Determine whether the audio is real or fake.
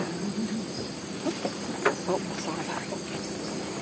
real